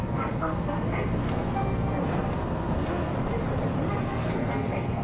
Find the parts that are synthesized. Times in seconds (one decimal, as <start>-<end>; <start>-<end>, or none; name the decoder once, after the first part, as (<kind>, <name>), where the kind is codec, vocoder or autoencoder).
0.0-3.1 (codec, SNAC); 4.0-5.0